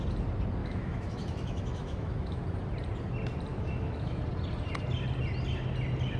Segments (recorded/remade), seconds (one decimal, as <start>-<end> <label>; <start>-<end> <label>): 0.0-0.6 recorded; 0.6-2.4 remade; 2.4-3.5 recorded; 3.5-4.2 remade; 4.2-6.2 recorded